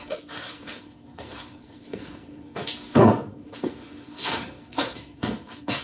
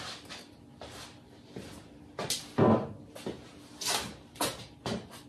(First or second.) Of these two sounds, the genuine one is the second